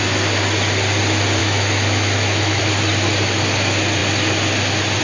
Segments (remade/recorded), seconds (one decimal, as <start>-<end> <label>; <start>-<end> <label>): 0.0-1.4 recorded; 1.4-2.6 remade; 2.6-5.0 recorded